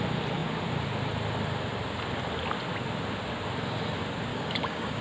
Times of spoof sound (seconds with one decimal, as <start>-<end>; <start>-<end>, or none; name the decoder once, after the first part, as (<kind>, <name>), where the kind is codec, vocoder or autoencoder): 4.3-5.0 (codec, DAC)